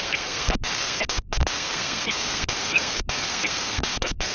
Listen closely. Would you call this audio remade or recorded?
remade